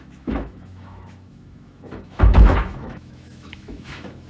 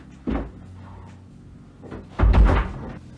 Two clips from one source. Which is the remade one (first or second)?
first